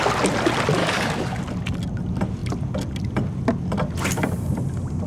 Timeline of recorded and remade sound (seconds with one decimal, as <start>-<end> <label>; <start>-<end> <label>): 0.0-0.8 recorded; 0.8-1.4 remade; 1.4-5.1 recorded